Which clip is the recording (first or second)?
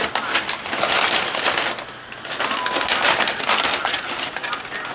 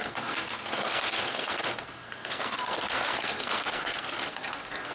first